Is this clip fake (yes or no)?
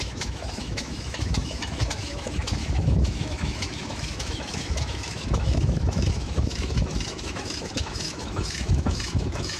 yes